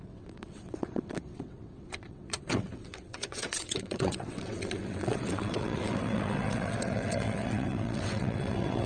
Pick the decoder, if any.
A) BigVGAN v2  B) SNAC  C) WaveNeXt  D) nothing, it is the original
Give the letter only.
C